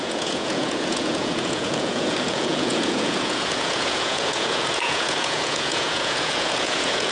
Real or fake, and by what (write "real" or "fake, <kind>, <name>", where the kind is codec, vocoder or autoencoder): fake, vocoder, Vocos